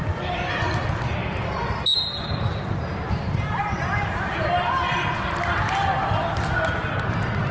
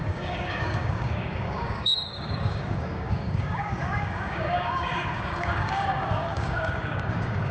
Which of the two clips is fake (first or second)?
second